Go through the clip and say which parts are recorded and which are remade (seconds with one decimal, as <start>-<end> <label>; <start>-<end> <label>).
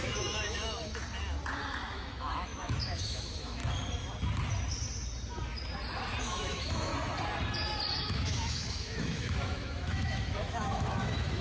0.0-1.0 remade; 1.0-1.9 recorded; 1.9-3.6 remade; 3.6-6.2 recorded; 6.2-6.9 remade; 6.9-8.0 recorded; 8.0-11.4 remade